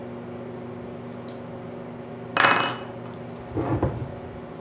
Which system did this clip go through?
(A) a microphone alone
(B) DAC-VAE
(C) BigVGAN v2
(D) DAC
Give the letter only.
A